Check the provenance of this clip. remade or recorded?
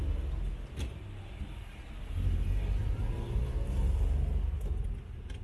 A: recorded